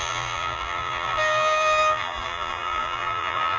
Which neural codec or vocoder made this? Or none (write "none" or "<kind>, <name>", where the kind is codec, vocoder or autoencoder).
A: vocoder, BigVGAN v2